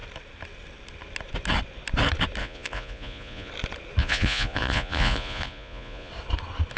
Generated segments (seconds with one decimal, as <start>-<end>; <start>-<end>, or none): 2.4-3.5; 4.0-6.1